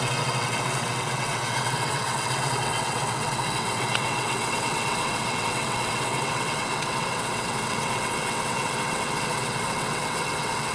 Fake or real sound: fake